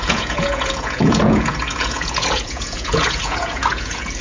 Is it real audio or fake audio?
fake